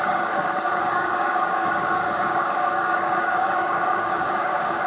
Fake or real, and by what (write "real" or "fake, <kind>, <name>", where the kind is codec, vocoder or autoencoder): fake, codec, DAC